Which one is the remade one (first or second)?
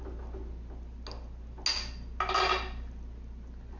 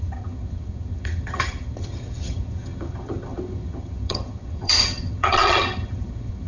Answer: second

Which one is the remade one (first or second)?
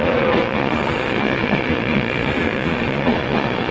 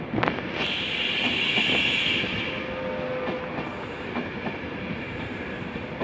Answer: first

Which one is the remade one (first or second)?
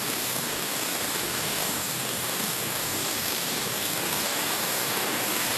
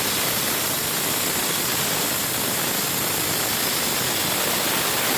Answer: first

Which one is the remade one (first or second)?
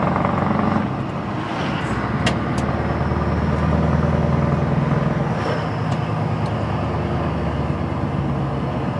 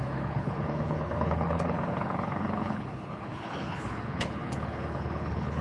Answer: second